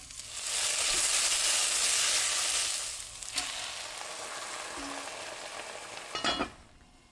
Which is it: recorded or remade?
recorded